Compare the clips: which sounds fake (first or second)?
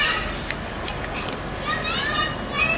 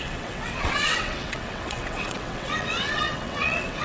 second